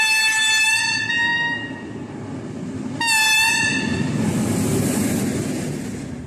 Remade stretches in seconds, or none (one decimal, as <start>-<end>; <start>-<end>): none